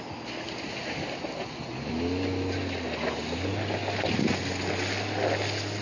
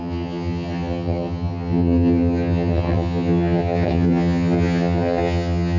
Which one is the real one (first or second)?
first